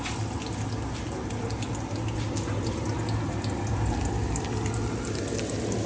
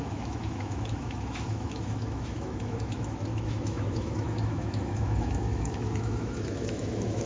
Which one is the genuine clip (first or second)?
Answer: first